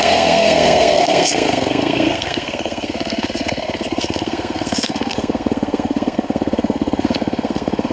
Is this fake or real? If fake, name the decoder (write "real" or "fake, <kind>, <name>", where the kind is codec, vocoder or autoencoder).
fake, codec, SNAC